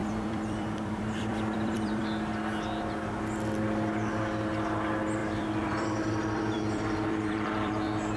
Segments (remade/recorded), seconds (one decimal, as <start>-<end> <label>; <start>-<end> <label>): 0.0-2.0 remade; 2.0-5.2 recorded; 5.2-7.7 remade; 7.7-8.2 recorded